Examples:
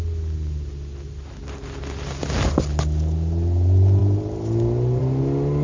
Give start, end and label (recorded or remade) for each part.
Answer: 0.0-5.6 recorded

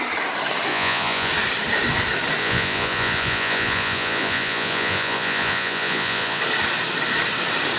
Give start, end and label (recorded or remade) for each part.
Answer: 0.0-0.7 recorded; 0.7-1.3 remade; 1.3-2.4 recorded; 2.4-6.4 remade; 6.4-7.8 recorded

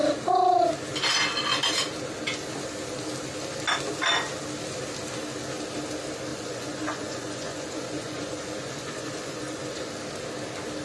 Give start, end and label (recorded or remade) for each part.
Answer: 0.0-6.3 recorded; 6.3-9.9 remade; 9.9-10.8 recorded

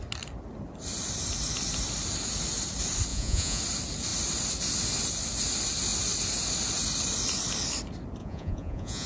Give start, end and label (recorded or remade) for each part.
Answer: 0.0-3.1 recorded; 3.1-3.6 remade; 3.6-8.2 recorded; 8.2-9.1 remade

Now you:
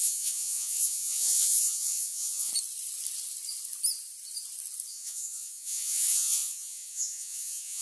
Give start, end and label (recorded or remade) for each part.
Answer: 0.0-2.5 remade; 2.5-4.9 recorded; 4.9-7.8 remade